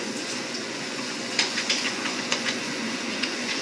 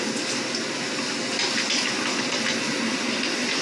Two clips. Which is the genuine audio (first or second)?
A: second